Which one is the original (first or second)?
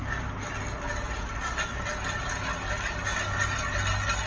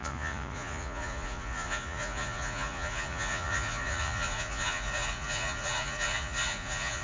first